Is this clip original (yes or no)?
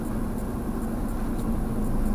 yes